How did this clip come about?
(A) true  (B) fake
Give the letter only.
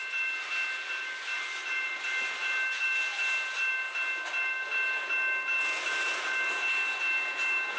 A